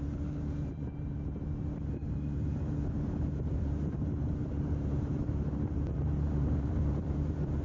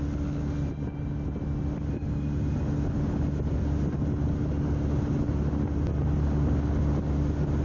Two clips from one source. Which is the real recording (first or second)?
second